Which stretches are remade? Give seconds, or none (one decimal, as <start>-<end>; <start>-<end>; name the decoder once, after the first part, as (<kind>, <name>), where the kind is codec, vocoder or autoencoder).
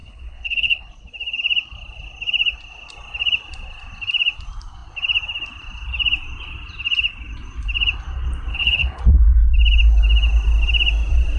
0.0-0.9 (codec, HILCodec); 8.5-9.0